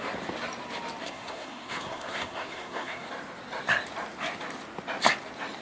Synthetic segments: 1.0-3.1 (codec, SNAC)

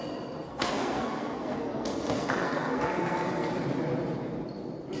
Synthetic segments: 0.5-3.5 (codec, SNAC)

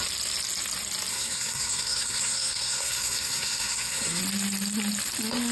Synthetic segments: 1.1-4.2 (codec, SNAC)

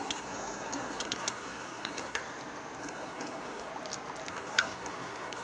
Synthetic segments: 0.0-2.2 (codec, SNAC); 2.8-3.7; 4.3-5.4